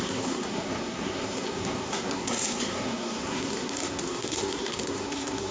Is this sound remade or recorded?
remade